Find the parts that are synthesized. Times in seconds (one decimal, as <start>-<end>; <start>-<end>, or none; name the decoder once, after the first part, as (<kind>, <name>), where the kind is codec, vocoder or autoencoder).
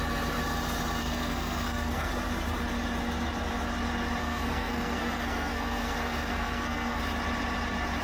1.0-2.1 (codec, SNAC); 4.2-7.0